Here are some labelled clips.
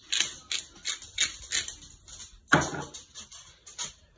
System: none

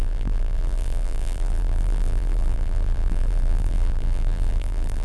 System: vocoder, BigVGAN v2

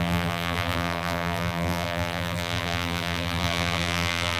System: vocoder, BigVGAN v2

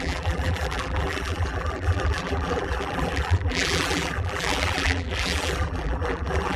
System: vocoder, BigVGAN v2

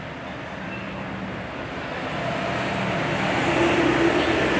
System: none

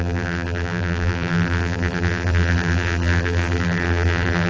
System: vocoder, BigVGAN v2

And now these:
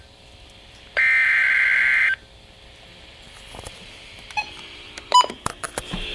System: vocoder, BigVGAN v2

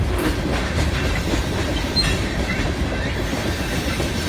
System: vocoder, BigVGAN v2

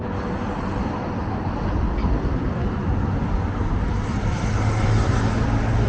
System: none